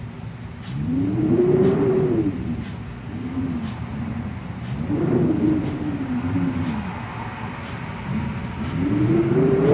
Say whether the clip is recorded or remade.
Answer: recorded